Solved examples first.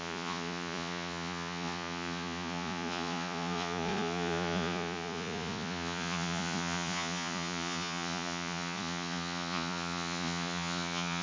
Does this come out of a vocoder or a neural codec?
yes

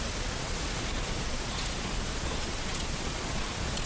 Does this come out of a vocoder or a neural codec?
yes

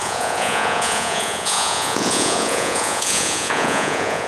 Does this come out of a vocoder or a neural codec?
yes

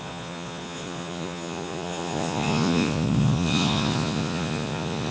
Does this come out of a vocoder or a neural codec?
yes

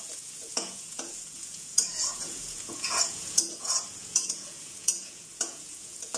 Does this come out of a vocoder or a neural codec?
yes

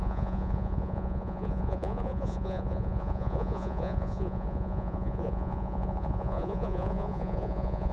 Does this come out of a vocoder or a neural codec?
yes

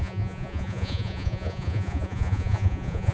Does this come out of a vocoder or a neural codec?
yes